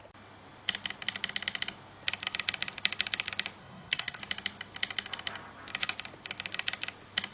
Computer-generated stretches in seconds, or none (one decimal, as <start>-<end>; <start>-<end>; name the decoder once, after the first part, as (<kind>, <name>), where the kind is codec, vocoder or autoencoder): 3.6-4.2 (codec, SNAC)